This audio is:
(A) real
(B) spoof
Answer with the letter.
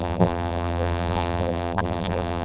B